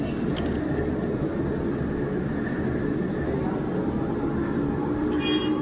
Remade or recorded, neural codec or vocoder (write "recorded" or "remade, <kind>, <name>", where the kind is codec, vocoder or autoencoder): recorded